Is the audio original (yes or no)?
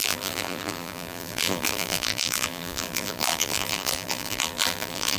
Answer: no